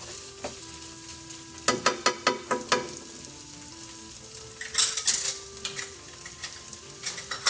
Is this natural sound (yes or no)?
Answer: yes